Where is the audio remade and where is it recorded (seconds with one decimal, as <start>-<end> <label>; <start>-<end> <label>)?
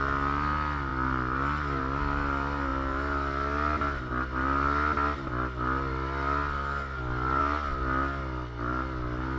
0.0-9.4 recorded